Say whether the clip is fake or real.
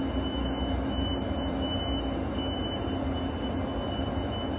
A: real